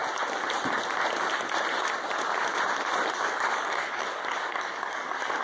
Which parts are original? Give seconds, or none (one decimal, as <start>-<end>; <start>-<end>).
0.0-3.2